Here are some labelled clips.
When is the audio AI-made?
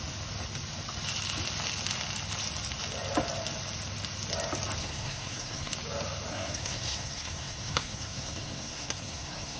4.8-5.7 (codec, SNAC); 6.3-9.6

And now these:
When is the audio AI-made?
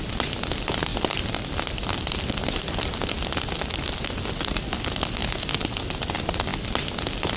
0.0-5.2 (vocoder, BigVGAN v2); 5.8-7.4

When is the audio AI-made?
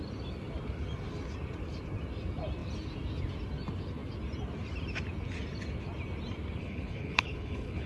6.6-7.9 (codec, HILCodec)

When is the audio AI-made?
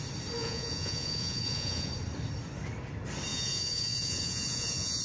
0.4-1.9 (vocoder, Vocos); 3.3-5.0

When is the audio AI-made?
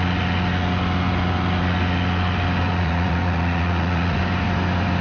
2.7-4.2 (vocoder, Vocos)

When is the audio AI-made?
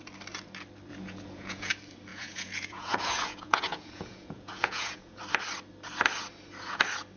0.9-1.7 (vocoder, Vocos); 2.1-5.2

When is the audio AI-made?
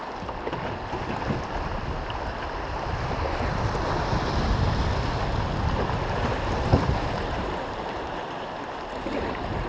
6.7-9.7 (vocoder, BigVGAN v2)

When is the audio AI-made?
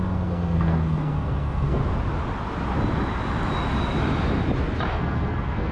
0.0-1.8 (codec, SNAC); 4.9-5.7